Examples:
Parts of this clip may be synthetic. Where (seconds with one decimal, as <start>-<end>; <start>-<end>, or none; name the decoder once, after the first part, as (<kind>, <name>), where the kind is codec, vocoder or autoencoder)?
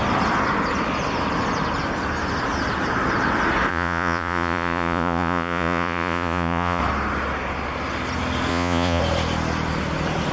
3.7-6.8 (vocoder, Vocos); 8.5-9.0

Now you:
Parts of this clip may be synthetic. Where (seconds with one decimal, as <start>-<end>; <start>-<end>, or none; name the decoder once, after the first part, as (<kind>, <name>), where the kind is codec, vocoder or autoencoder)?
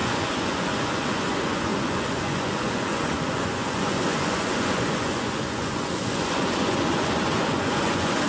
0.0-8.3 (vocoder, Vocos)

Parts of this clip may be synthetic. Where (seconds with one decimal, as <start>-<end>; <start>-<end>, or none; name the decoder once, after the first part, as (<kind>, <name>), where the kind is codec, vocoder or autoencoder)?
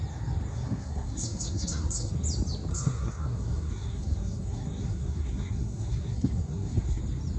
0.5-2.1 (codec, SNAC); 2.7-7.0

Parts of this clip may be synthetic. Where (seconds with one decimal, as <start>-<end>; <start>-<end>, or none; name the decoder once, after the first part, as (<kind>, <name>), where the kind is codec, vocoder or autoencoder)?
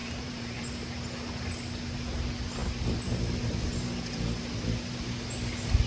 0.0-0.8 (vocoder, BigVGAN v2)